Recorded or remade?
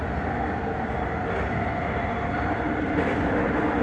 recorded